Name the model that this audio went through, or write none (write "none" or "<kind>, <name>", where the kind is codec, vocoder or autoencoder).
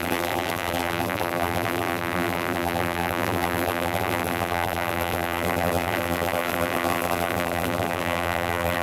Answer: vocoder, BigVGAN v2